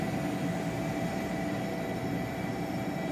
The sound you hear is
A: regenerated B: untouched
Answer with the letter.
B